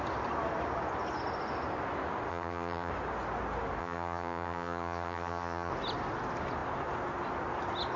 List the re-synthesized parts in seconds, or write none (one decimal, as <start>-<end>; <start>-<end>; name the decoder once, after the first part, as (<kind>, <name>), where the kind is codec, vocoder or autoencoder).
2.3-2.9 (vocoder, HiFi-GAN); 3.8-5.7